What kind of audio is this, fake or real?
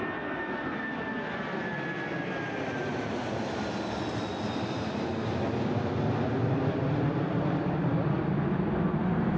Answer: real